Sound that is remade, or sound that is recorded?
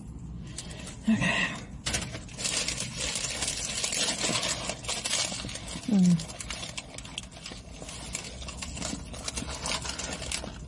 recorded